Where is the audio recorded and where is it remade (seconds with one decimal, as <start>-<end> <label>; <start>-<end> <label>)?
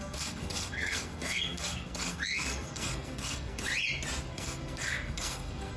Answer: 0.0-3.7 remade; 3.7-4.3 recorded; 4.3-5.8 remade